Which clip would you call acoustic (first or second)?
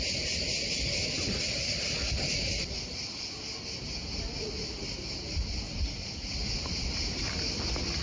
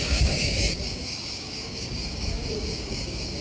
first